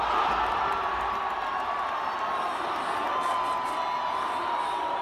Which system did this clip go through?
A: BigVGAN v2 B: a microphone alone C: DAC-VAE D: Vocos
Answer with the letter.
B